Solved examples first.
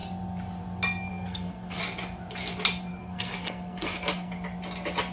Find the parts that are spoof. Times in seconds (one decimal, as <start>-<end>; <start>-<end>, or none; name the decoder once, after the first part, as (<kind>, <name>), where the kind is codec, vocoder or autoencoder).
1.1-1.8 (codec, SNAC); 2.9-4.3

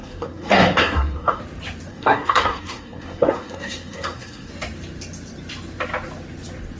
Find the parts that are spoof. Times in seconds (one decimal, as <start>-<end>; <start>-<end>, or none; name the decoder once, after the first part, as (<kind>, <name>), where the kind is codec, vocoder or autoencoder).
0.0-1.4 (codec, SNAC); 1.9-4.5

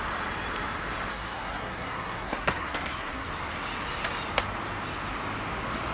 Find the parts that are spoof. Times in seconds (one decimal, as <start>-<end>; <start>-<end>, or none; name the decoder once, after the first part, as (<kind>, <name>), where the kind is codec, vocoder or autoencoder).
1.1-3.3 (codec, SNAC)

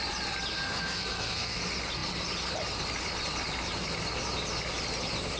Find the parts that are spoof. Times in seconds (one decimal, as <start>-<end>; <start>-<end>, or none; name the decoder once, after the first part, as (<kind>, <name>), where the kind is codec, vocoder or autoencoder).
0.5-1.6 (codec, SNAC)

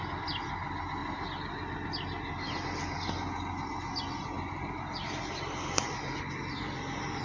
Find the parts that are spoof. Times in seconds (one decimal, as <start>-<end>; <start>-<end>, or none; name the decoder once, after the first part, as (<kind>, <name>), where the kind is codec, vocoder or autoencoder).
none